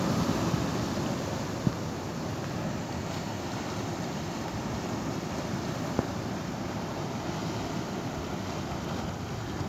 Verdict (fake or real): real